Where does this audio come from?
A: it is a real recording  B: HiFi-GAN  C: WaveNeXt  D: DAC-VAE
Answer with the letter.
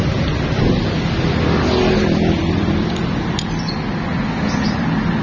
A